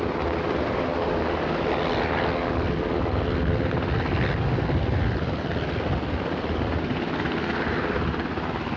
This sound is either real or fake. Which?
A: real